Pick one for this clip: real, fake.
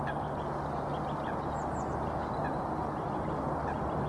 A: real